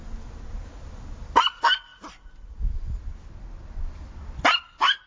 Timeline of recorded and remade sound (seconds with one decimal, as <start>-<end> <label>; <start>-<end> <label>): 0.0-5.1 recorded